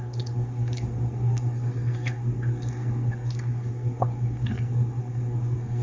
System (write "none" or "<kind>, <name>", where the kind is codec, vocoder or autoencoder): codec, SNAC